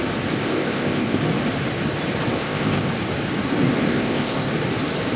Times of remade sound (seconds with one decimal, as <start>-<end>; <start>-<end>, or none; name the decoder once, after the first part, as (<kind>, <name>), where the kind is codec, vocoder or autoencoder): 0.4-1.2 (codec, ZipCodec); 2.4-2.9; 3.9-4.5